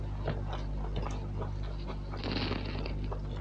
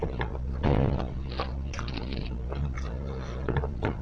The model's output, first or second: second